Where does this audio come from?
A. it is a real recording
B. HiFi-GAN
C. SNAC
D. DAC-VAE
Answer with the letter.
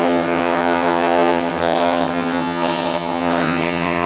B